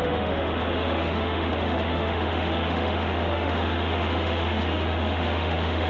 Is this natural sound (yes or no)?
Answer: no